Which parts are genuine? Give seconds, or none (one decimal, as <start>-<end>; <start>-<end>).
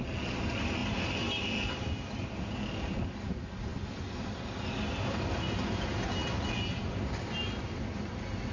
0.0-0.8; 2.4-8.5